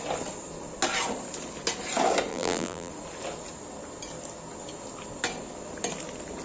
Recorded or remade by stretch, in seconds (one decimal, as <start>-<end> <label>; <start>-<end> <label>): 0.0-2.3 recorded; 2.3-2.9 remade; 2.9-6.4 recorded